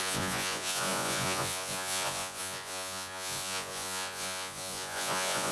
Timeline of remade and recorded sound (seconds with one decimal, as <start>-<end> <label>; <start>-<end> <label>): 0.0-5.5 remade